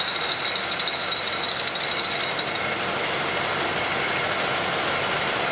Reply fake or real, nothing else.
real